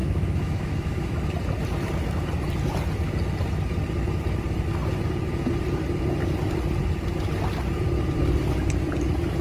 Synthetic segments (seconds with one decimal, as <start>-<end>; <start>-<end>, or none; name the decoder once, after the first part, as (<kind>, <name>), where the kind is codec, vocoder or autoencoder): 0.0-1.3 (autoencoder, DAC-VAE)